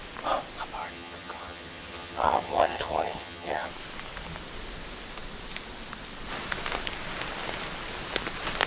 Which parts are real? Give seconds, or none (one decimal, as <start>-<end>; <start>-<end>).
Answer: 0.0-0.8; 3.7-8.7